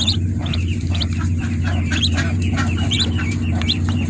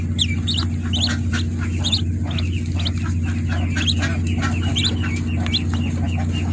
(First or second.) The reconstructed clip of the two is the first